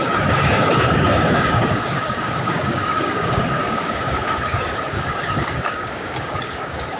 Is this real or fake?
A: fake